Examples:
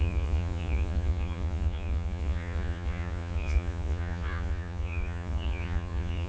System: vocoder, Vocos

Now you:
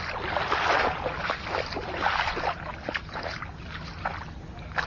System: none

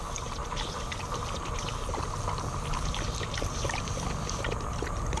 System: none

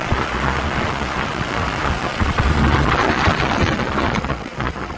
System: vocoder, Vocos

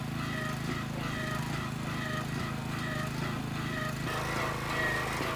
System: none